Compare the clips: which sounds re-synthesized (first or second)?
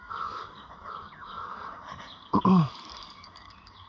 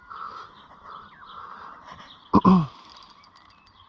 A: first